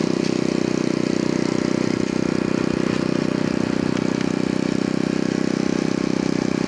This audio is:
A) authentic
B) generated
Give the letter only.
A